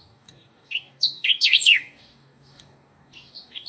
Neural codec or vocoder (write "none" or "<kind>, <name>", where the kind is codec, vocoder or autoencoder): codec, DAC